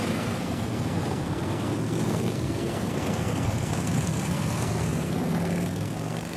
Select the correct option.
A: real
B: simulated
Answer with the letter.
B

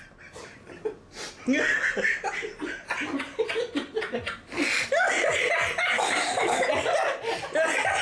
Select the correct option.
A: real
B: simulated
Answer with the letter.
A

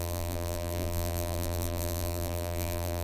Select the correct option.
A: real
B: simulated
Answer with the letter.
B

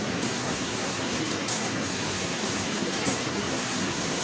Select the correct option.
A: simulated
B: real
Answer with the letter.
A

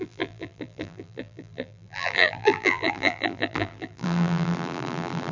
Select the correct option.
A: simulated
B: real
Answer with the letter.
A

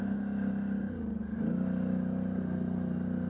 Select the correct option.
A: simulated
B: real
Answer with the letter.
B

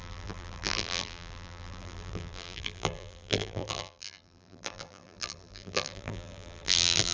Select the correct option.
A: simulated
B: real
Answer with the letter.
A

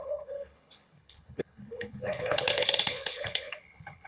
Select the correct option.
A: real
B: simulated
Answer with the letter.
B